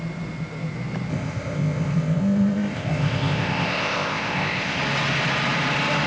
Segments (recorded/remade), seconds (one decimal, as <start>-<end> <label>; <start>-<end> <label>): 0.0-1.1 recorded; 1.1-4.8 remade; 4.8-6.1 recorded